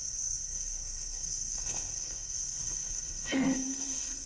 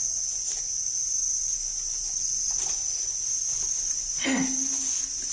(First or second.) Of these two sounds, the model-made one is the first